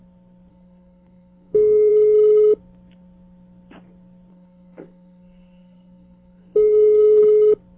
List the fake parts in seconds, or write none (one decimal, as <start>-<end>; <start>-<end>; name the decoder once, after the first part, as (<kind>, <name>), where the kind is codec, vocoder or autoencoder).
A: 0.5-1.9 (codec, SNAC); 4.3-7.2